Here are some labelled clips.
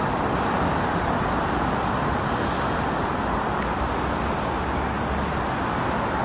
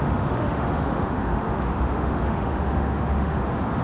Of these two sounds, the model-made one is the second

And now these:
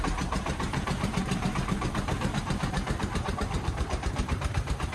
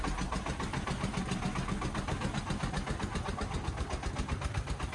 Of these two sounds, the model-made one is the first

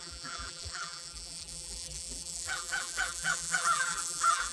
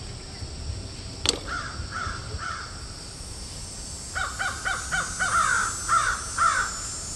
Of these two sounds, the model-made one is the first